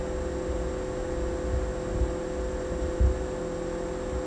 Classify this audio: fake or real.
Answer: real